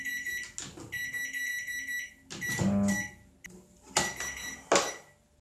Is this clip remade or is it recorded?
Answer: recorded